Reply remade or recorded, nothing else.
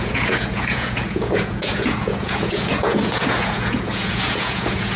remade